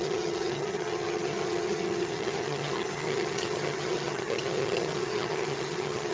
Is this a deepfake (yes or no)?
yes